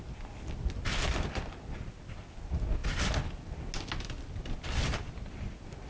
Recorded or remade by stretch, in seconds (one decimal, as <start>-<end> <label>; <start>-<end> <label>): 0.0-5.9 recorded